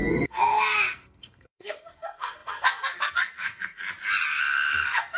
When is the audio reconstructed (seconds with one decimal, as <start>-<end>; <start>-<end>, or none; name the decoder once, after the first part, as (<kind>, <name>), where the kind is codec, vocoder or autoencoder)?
0.0-3.8 (codec, SNAC); 4.4-5.2